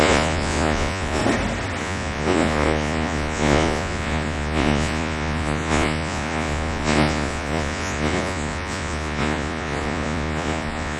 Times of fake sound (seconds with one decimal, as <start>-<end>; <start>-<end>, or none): 0.0-1.2; 1.8-11.0